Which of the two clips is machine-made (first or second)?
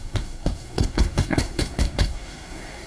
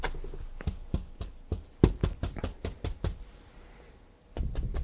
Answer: first